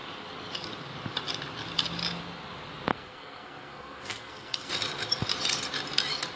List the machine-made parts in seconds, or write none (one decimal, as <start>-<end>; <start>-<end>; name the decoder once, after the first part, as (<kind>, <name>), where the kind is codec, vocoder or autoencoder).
2.9-4.7 (codec, SNAC)